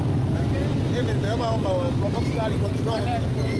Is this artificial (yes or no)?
no